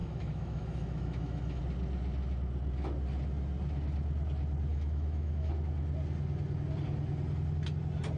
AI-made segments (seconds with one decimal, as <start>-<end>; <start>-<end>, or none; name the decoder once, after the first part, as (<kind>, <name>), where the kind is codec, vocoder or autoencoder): 0.0-1.6 (autoencoder, DAC-VAE); 4.7-5.5